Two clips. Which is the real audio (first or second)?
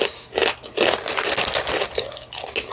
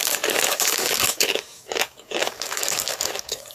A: first